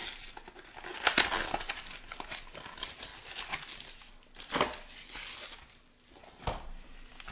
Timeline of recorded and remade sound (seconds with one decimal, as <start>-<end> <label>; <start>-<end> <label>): 0.0-7.3 recorded